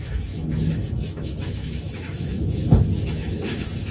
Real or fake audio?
fake